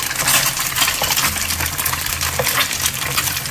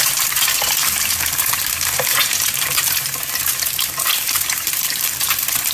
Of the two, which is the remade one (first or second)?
second